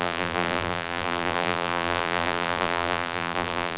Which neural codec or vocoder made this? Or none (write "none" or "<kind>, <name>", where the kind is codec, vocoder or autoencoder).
vocoder, BigVGAN v2